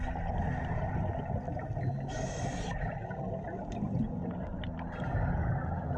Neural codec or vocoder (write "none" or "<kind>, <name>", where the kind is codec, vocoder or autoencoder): none